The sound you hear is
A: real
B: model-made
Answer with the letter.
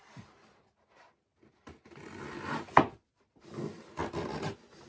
A